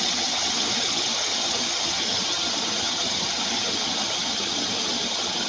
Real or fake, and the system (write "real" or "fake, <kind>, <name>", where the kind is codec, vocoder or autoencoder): fake, vocoder, HiFi-GAN